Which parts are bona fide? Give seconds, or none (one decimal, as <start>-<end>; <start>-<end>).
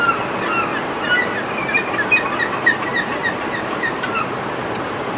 0.0-0.7; 1.9-2.9